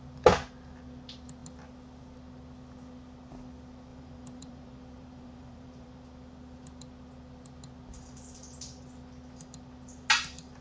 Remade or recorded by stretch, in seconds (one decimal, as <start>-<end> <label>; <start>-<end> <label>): 0.0-3.9 recorded; 3.9-5.9 remade; 5.9-10.6 recorded